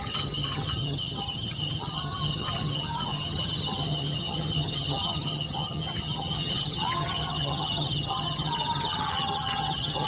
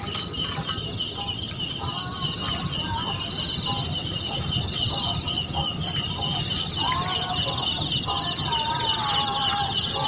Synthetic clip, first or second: first